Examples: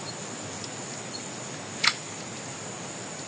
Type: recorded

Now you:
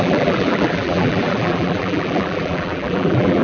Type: remade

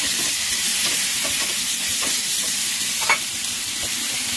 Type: remade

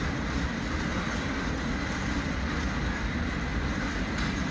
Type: recorded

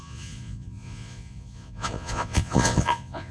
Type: remade